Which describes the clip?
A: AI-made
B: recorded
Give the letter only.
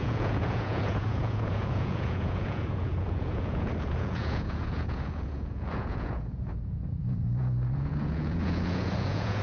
A